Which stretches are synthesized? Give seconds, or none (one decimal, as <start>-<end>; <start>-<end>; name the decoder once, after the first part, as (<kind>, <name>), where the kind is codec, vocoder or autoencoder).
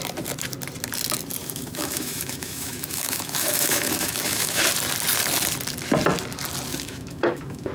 1.4-4.6 (autoencoder, DAC-VAE); 6.7-7.7